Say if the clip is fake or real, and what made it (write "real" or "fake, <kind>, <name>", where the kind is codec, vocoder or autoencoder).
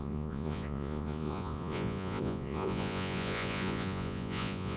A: fake, vocoder, Vocos